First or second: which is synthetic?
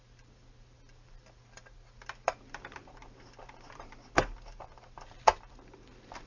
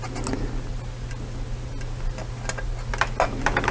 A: first